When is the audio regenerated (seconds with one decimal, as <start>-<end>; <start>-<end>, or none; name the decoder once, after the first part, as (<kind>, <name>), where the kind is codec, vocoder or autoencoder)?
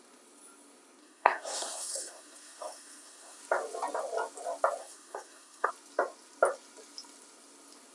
1.0-3.4 (codec, SNAC); 4.8-5.7